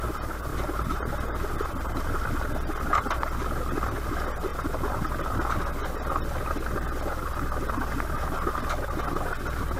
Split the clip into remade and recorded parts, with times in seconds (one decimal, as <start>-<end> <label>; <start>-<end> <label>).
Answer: 0.0-9.8 recorded